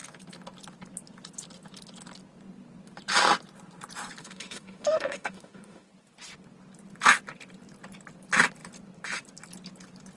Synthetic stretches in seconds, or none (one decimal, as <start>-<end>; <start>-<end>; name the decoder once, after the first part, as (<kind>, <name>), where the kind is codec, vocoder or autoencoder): 4.2-5.9 (autoencoder, DAC-VAE)